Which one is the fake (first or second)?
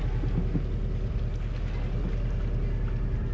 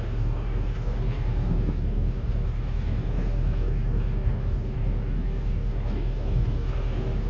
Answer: second